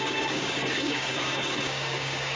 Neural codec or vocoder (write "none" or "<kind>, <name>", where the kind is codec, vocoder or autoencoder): codec, DAC